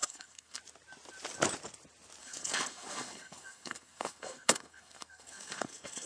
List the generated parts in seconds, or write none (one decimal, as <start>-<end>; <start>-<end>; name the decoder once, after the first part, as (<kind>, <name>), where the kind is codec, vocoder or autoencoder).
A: 0.0-0.6 (codec, SNAC); 2.2-6.1